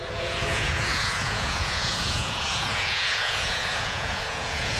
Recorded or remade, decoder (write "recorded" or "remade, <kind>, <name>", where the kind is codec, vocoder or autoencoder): remade, vocoder, Vocos